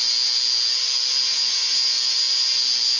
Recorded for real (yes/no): yes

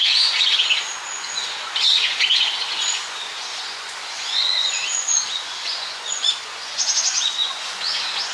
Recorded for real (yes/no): no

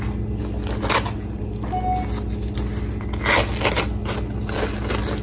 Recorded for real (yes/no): yes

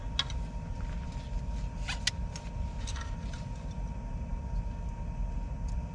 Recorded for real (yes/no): yes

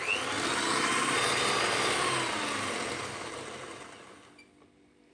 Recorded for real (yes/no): yes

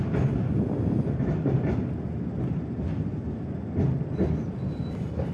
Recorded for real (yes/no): yes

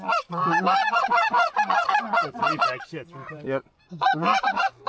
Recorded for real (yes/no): no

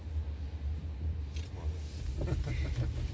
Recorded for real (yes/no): yes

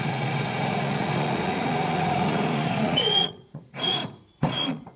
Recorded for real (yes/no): no